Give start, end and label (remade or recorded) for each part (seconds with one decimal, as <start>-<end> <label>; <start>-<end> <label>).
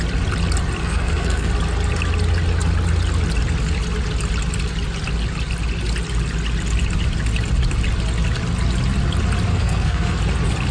0.0-0.8 recorded; 0.8-1.5 remade; 1.5-9.5 recorded; 9.5-10.2 remade; 10.2-10.7 recorded